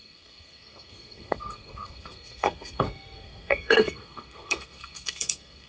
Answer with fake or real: fake